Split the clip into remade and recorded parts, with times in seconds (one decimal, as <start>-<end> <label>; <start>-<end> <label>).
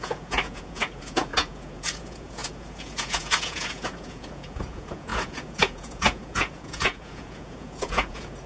0.0-8.5 remade